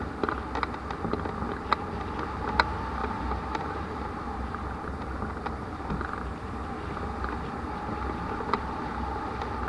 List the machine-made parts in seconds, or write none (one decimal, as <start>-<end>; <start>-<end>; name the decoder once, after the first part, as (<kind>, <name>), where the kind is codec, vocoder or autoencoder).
3.0-4.1 (vocoder, BigVGAN v2)